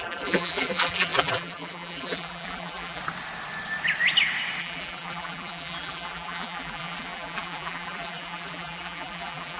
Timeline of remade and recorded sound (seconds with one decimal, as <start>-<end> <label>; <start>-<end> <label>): 0.0-3.0 remade; 3.0-4.6 recorded; 4.6-9.6 remade